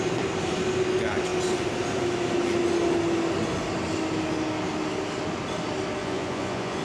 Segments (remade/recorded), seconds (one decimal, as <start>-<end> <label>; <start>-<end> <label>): 0.0-6.0 recorded; 6.0-6.8 remade